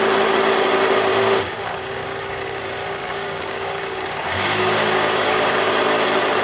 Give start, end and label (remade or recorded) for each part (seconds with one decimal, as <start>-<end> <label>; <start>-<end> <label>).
0.0-1.1 recorded; 1.1-2.6 remade; 2.6-3.0 recorded; 3.0-5.7 remade; 5.7-6.4 recorded